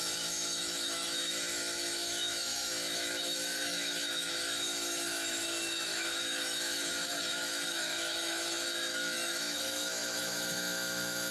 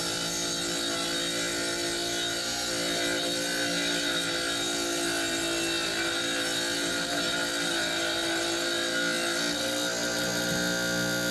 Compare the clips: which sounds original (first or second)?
second